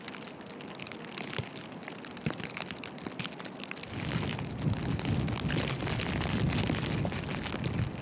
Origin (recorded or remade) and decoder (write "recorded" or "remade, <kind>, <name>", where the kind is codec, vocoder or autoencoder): recorded